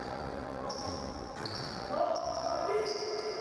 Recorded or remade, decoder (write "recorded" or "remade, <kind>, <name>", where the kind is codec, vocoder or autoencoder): remade, vocoder, WaveNeXt